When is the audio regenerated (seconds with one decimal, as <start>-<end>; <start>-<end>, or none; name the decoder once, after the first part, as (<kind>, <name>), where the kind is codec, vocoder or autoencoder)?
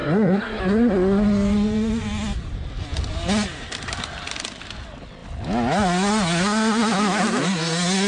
0.0-0.6 (codec, SNAC)